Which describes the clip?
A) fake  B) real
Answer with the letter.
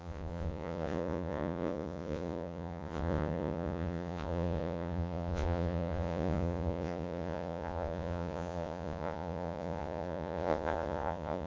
A